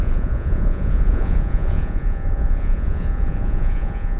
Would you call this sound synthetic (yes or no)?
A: yes